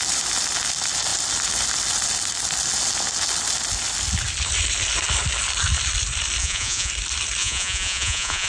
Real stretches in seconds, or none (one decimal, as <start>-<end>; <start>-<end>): 0.0-6.4; 6.9-7.4